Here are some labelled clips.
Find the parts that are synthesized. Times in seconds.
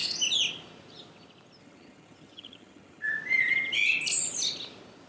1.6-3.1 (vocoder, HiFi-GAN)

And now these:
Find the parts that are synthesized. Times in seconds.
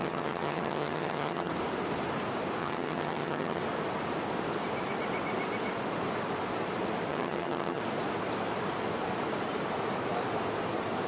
0.0-1.5 (vocoder, HiFi-GAN); 2.6-3.6; 7.1-7.8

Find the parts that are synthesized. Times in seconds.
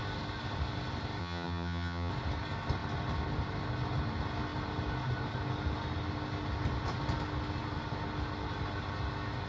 1.2-2.1 (vocoder, HiFi-GAN)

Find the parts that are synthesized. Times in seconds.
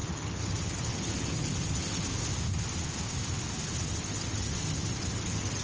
0.0-2.1 (vocoder, HiFi-GAN); 3.9-5.6